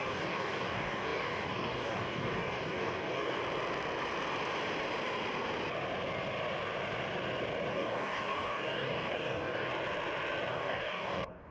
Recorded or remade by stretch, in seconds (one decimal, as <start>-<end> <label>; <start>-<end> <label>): 0.0-3.4 remade; 3.4-7.7 recorded; 7.7-9.7 remade; 9.7-10.5 recorded; 10.5-11.5 remade